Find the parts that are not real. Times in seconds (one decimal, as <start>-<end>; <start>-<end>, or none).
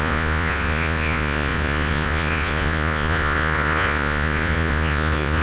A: 0.0-5.4